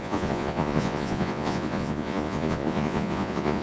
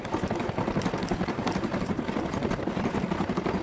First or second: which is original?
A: second